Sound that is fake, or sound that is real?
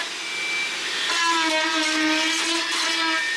real